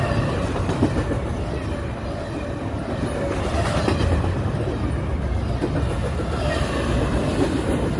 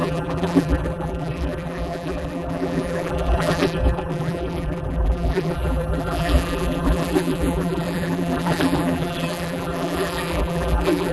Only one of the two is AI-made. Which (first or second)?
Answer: second